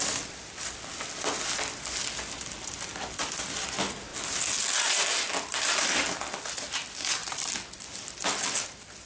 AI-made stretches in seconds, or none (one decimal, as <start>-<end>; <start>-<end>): none